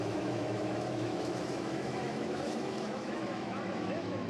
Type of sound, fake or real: fake